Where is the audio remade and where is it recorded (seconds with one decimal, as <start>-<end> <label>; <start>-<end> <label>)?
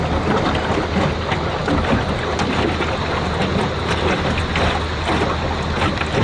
0.0-6.2 recorded